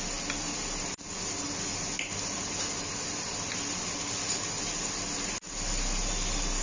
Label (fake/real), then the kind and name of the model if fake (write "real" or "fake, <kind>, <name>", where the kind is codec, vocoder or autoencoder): real